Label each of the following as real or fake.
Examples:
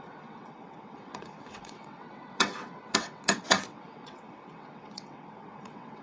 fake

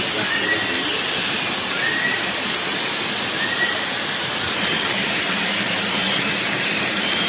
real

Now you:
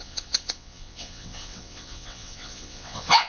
fake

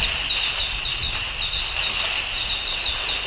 real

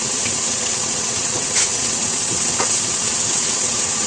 fake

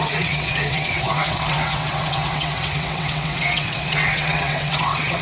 fake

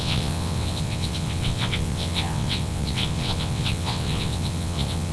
fake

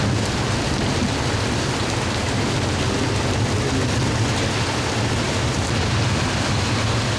real